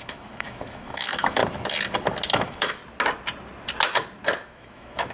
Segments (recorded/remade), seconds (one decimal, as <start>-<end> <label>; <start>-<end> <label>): 0.0-1.4 remade; 1.4-2.3 recorded; 2.3-2.8 remade; 2.8-4.4 recorded; 4.4-5.1 remade